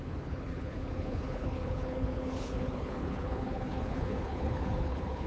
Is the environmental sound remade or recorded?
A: remade